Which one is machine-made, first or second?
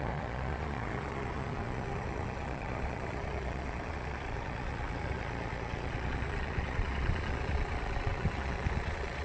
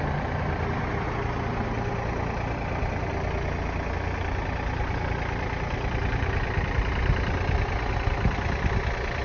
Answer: first